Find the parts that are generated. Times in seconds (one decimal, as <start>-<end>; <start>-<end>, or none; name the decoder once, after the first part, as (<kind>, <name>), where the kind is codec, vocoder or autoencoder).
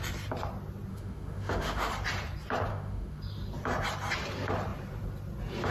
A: 0.9-1.9 (autoencoder, DAC-VAE); 2.7-3.2